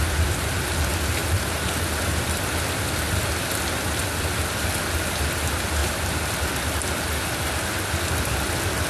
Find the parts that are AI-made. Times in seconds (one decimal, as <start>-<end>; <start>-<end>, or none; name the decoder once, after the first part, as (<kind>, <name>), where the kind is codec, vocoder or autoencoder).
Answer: none